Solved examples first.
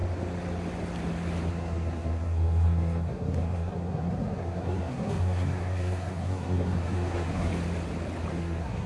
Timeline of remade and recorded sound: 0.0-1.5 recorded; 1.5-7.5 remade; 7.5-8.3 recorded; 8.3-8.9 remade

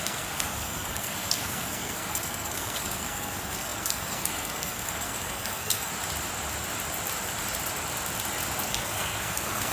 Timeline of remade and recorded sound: 0.0-5.9 remade; 5.9-8.7 recorded; 8.7-9.7 remade

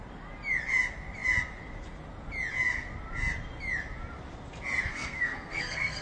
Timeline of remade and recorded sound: 0.0-4.9 recorded; 4.9-6.0 remade

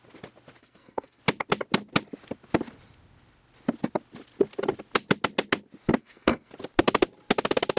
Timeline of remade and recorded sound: 0.0-0.6 recorded; 0.6-1.2 remade; 1.2-6.0 recorded; 6.0-6.5 remade; 6.5-7.8 recorded

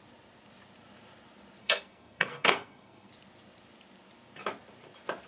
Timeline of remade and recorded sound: 0.0-1.6 recorded; 1.6-3.1 remade; 3.1-5.3 recorded

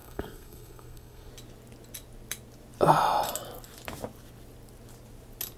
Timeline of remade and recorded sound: 0.0-1.3 remade; 1.3-5.6 recorded

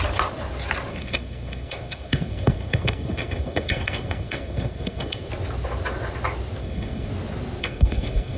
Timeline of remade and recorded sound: 0.0-0.9 recorded; 0.9-5.3 remade; 5.3-6.6 recorded; 6.6-7.1 remade; 7.1-7.6 recorded; 7.6-8.4 remade